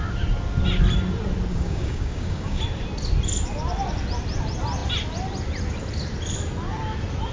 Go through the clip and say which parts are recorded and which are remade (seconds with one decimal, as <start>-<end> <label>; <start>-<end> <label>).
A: 0.0-1.5 recorded; 1.5-2.6 remade; 2.6-7.3 recorded